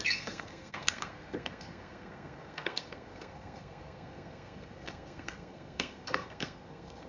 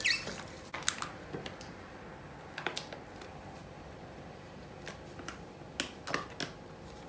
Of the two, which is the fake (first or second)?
first